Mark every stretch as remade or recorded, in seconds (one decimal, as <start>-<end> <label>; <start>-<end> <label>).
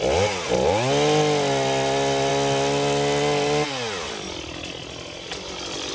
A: 0.0-5.9 recorded